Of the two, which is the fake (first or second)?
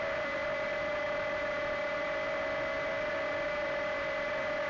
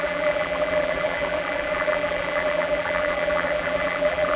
second